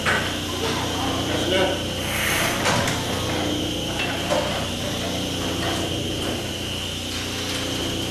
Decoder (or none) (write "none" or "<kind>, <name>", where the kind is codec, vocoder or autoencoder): none